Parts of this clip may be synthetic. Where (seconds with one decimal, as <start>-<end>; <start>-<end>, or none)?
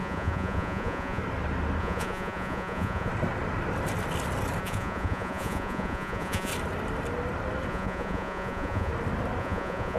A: 0.0-1.2; 1.8-3.1; 4.6-6.5; 7.7-8.9; 9.4-10.0